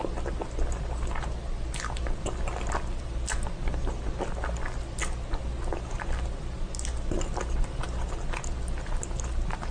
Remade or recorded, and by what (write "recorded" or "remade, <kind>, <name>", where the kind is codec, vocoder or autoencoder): recorded